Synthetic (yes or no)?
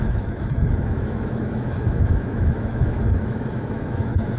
yes